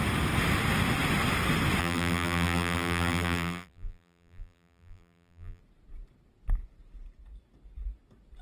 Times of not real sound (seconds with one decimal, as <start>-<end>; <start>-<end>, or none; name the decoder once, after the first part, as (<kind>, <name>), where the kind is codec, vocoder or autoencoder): 1.8-5.6 (vocoder, BigVGAN v2)